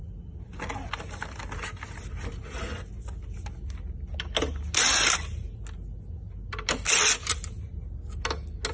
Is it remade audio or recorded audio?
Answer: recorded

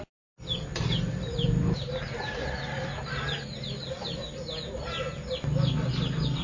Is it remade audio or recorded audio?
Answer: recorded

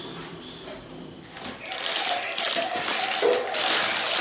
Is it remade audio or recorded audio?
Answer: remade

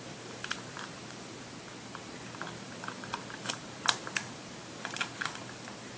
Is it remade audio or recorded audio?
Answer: remade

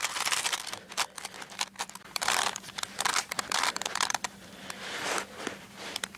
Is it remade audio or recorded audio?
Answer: remade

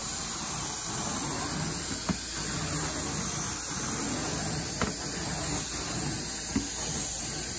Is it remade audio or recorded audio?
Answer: recorded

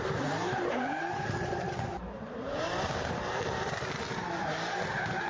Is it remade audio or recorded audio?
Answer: remade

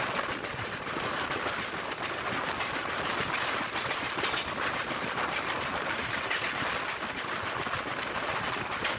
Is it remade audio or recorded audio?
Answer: recorded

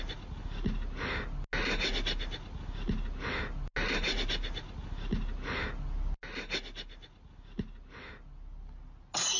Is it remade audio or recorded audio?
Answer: recorded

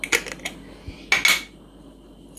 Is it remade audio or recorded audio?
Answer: recorded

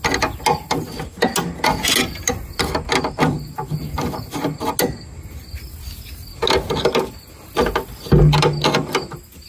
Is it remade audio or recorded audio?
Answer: recorded